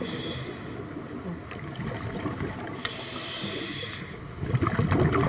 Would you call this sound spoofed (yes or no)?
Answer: no